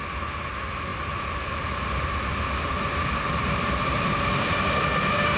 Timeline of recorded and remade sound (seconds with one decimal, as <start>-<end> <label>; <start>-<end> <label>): 0.0-5.4 recorded